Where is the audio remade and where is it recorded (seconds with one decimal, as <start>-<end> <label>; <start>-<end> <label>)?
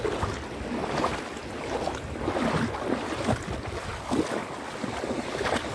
0.0-5.7 recorded